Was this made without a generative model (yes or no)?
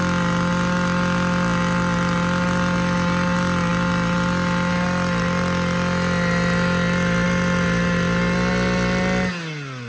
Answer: yes